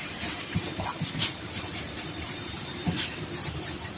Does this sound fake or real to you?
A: fake